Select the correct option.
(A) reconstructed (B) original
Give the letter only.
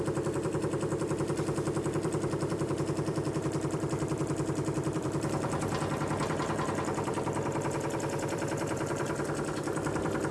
A